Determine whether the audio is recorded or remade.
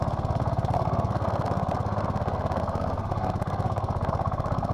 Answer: remade